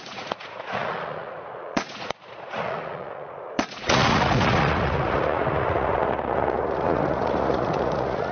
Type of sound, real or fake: fake